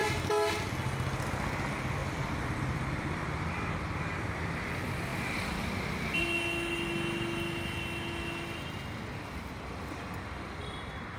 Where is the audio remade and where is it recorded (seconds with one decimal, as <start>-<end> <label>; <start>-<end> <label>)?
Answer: 0.0-2.0 recorded; 2.0-3.8 remade; 3.8-5.1 recorded; 5.1-6.2 remade; 6.2-11.2 recorded